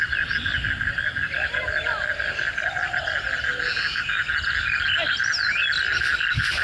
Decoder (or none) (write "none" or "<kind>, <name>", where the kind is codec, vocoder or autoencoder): vocoder, BigVGAN v2